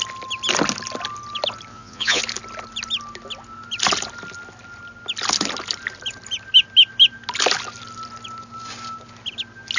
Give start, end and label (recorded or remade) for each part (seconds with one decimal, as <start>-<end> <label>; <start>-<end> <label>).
0.0-1.7 recorded; 1.7-2.2 remade; 2.2-9.8 recorded